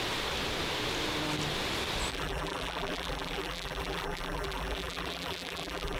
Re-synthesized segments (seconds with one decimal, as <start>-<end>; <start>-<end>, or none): 2.1-6.0

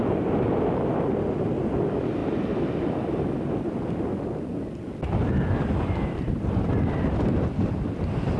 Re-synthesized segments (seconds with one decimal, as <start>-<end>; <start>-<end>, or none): none

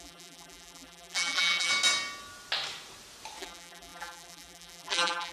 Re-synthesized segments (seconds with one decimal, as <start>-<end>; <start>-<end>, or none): 0.0-1.7; 3.4-5.3

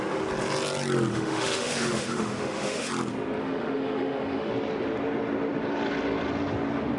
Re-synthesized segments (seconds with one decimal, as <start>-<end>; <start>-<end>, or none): 1.1-2.9; 3.4-4.5